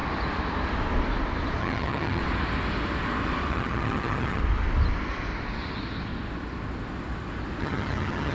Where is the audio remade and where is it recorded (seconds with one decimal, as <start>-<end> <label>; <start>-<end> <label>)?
0.0-1.6 recorded; 1.6-2.2 remade; 2.2-3.5 recorded; 3.5-4.4 remade; 4.4-7.6 recorded; 7.6-8.3 remade